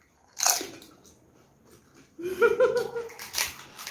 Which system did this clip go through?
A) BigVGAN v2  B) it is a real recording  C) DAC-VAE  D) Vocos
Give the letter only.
B